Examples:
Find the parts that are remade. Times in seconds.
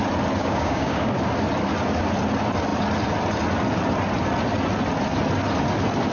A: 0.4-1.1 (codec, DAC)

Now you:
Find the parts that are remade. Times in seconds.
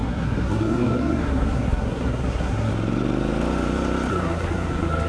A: 0.0-2.7 (codec, SNAC); 4.1-5.1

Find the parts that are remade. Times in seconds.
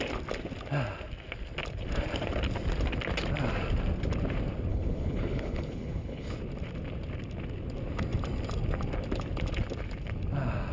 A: 4.7-6.3 (codec, HILCodec)